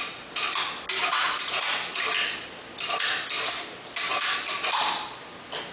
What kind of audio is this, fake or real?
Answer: real